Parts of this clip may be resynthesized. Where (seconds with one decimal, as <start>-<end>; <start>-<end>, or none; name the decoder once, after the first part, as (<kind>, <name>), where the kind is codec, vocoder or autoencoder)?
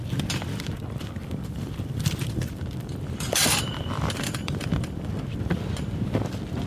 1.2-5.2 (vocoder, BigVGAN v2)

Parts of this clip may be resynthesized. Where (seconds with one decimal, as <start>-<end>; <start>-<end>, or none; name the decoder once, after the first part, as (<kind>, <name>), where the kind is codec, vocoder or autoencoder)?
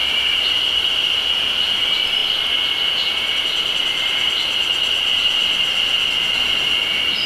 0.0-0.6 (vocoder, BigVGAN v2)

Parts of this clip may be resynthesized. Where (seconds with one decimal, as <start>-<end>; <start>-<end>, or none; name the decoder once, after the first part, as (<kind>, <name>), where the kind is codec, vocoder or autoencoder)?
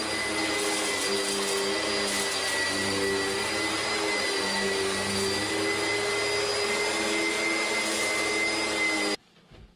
none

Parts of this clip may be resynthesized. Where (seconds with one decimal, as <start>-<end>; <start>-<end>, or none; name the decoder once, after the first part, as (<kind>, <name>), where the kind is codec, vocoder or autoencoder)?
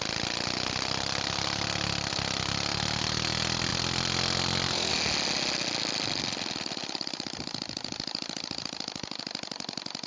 6.8-9.2 (vocoder, BigVGAN v2)